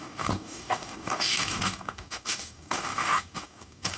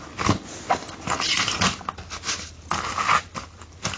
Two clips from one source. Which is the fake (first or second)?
first